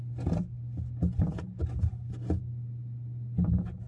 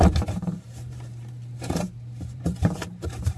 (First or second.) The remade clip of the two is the second